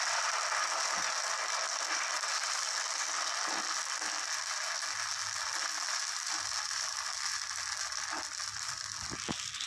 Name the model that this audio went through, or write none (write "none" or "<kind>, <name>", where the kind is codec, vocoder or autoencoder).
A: none